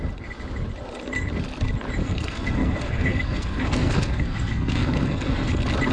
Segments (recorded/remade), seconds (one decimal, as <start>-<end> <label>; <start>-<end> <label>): 0.0-2.0 recorded; 2.0-5.5 remade; 5.5-5.9 recorded